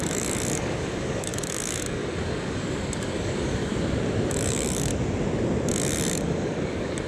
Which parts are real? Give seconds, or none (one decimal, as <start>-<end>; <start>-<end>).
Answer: 3.7-4.3; 4.9-6.2